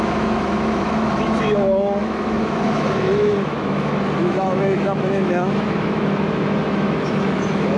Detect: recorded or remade remade